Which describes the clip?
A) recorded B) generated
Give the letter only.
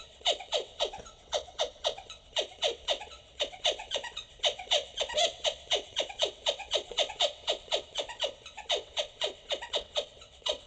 B